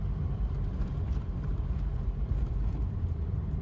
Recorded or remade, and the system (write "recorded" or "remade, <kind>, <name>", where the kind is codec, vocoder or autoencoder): remade, vocoder, BigVGAN v2